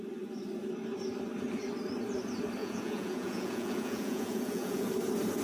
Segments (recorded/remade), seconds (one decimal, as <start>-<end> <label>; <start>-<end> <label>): 0.0-2.6 recorded; 2.6-4.9 remade; 4.9-5.4 recorded